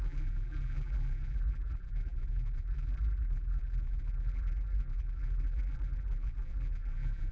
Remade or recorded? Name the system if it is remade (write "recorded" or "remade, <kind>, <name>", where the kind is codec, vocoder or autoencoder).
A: remade, vocoder, BigVGAN v2